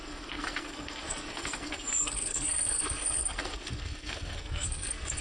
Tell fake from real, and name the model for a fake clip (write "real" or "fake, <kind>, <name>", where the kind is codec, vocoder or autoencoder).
fake, codec, SNAC